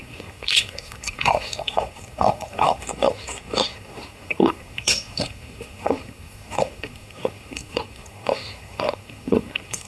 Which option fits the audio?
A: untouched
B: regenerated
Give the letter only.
B